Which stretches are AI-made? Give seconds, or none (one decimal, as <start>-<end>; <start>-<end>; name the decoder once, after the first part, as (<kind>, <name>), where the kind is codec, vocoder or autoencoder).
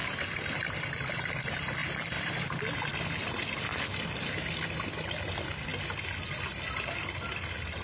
0.0-2.9 (vocoder, BigVGAN v2); 5.3-5.7; 7.0-7.8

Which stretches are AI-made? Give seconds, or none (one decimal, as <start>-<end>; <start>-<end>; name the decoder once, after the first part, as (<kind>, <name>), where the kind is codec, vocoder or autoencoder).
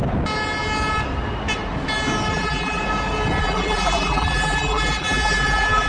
2.3-2.8 (vocoder, BigVGAN v2); 3.4-5.9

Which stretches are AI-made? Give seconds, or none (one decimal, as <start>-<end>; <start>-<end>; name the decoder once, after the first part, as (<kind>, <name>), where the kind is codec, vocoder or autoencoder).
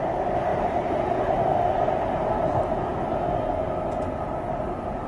0.5-3.1 (vocoder, BigVGAN v2)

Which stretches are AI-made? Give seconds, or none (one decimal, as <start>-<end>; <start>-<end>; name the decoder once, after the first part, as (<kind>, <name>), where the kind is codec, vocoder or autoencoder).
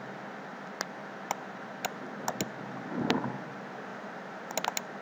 3.9-4.5 (vocoder, BigVGAN v2)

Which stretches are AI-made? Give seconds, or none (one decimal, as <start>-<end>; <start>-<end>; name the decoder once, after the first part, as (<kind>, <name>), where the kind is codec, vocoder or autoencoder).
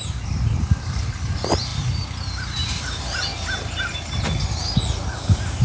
0.0-3.3 (vocoder, BigVGAN v2); 5.1-5.6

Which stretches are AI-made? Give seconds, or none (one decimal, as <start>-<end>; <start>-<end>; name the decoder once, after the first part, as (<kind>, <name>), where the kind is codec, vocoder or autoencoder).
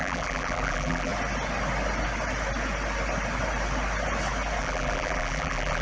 0.0-1.1 (vocoder, BigVGAN v2); 4.6-5.8